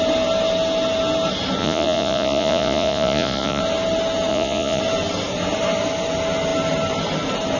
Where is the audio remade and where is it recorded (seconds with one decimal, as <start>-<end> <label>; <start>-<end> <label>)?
0.0-1.6 recorded; 1.6-3.6 remade; 3.6-4.3 recorded; 4.3-4.8 remade; 4.8-7.6 recorded

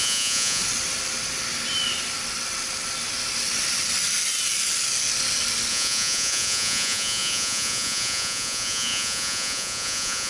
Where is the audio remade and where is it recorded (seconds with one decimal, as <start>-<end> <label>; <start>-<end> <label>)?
0.0-0.6 remade; 0.6-5.7 recorded; 5.7-10.3 remade

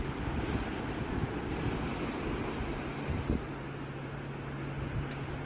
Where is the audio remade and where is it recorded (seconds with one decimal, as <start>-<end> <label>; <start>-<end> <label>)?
0.0-5.4 recorded

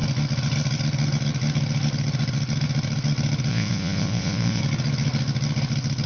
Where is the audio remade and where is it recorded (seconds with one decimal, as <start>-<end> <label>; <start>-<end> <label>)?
0.0-3.5 recorded; 3.5-4.6 remade; 4.6-6.1 recorded

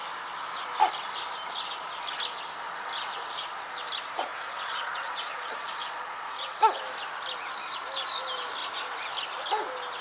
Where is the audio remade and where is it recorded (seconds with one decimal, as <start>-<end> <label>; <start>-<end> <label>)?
0.0-4.3 recorded; 4.3-6.8 remade; 6.8-10.0 recorded